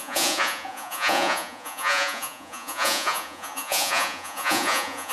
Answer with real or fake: fake